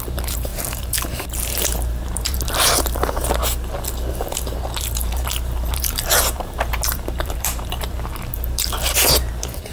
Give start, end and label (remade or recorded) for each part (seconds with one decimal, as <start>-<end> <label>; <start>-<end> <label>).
0.0-3.4 remade; 3.4-4.1 recorded; 4.1-9.7 remade